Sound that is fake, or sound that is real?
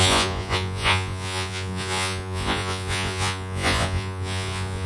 fake